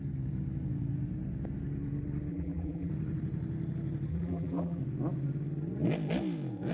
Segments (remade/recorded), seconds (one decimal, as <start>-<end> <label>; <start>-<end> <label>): 0.0-2.3 recorded; 2.3-2.9 remade; 2.9-4.1 recorded; 4.1-4.8 remade; 4.8-6.7 recorded